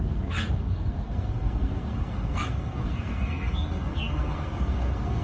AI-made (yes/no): yes